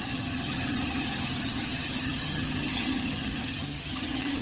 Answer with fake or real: fake